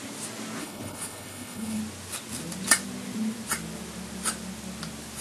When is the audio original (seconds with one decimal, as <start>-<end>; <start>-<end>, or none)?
0.0-0.6; 1.8-5.2